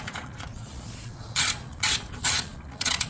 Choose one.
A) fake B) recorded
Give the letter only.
A